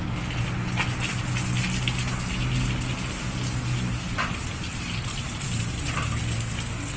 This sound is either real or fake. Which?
real